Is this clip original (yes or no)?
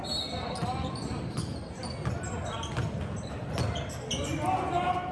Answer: yes